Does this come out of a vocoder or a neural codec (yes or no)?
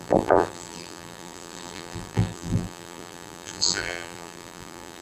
yes